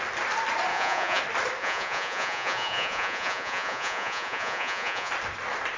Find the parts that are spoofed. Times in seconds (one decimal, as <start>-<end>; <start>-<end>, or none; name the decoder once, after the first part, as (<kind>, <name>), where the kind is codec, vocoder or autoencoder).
0.7-1.2 (vocoder, Vocos); 1.6-5.1